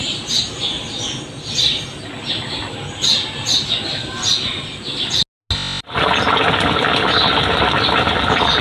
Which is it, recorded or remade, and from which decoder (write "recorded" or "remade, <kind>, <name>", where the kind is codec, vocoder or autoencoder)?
recorded